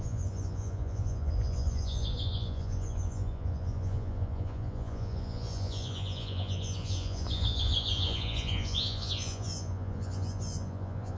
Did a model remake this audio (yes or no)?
yes